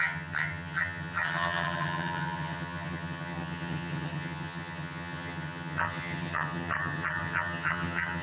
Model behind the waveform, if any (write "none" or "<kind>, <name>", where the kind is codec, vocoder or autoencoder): vocoder, HiFi-GAN